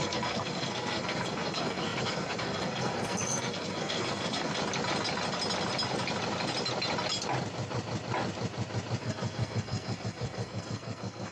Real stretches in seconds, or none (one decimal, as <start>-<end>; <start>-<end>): 4.5-9.0